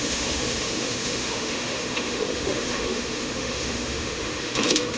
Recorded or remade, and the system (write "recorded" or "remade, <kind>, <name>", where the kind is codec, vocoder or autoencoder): remade, autoencoder, DAC-VAE